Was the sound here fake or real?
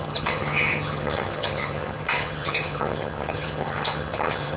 fake